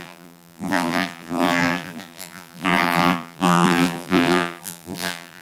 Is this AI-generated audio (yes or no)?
yes